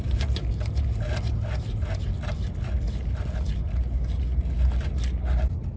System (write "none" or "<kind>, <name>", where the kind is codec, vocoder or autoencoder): none